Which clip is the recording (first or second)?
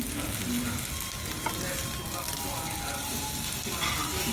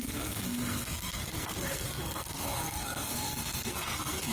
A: first